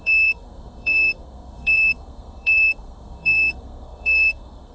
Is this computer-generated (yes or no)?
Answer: yes